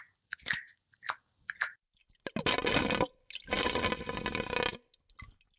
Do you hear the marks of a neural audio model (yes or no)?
no